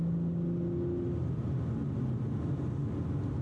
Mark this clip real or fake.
real